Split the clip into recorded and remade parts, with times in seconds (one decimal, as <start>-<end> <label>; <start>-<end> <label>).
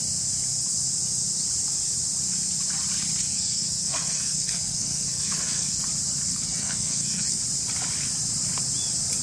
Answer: 0.0-3.2 recorded; 3.2-5.8 remade; 5.8-6.3 recorded; 6.3-7.4 remade; 7.4-9.2 recorded